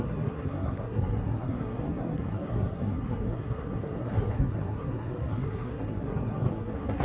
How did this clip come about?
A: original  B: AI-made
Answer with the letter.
B